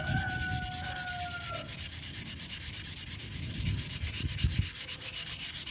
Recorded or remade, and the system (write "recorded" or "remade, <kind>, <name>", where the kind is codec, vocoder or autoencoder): recorded